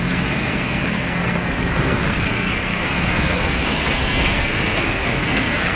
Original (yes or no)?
no